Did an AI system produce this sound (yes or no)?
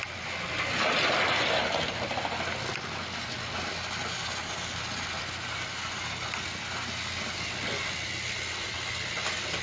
no